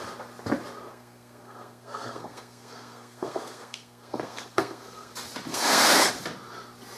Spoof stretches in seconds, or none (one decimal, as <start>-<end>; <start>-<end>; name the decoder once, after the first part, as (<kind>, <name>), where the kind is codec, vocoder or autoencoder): 0.9-5.1 (codec, SNAC); 5.5-6.1